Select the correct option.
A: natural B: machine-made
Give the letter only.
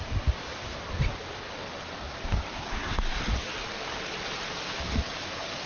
A